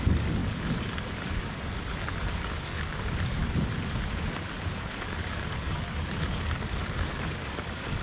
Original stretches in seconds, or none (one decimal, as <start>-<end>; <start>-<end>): 0.4-1.3; 3.4-4.7